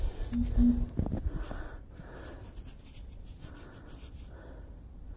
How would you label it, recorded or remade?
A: recorded